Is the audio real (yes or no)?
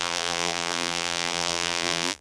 no